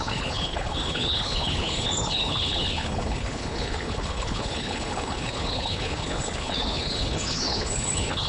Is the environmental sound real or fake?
fake